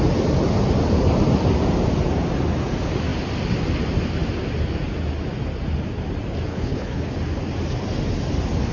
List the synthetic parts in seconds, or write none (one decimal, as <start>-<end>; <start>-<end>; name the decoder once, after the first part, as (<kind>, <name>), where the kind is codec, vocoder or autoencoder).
6.5-7.1 (codec, HILCodec)